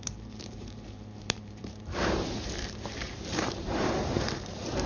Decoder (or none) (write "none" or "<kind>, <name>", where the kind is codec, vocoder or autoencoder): vocoder, BigVGAN v2